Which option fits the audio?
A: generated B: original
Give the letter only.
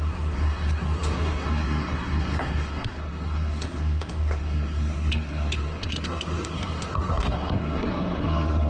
A